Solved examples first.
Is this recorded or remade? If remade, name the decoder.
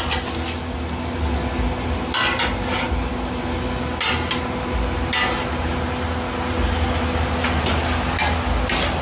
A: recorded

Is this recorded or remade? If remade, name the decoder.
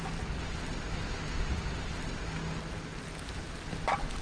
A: recorded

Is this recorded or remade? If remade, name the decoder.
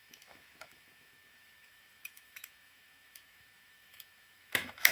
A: remade, autoencoder, DAC-VAE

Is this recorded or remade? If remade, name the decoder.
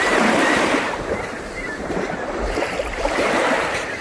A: remade, vocoder, BigVGAN v2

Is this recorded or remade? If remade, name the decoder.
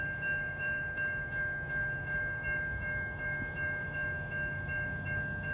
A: remade, autoencoder, DAC-VAE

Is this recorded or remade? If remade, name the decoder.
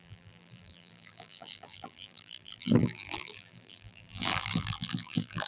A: remade, vocoder, BigVGAN v2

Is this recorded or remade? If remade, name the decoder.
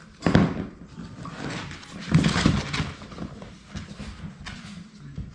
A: recorded